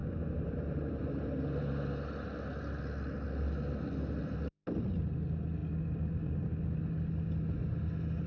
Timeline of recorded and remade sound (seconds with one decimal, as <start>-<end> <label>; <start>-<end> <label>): 0.0-1.7 remade; 1.7-8.3 recorded